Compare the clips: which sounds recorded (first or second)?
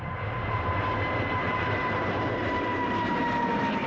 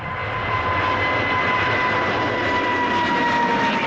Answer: second